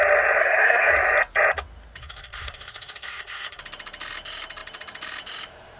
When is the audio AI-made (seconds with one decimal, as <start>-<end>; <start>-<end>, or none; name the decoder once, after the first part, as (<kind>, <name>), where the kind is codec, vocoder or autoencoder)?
0.4-0.9 (codec, SNAC); 2.0-3.6